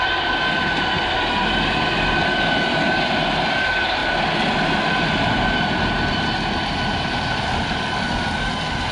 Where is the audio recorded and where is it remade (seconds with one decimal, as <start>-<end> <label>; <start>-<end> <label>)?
0.0-8.9 recorded